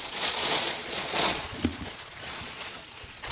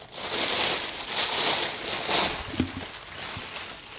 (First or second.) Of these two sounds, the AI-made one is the first